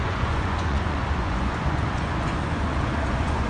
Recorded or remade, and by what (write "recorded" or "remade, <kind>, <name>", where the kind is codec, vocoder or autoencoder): remade, vocoder, Vocos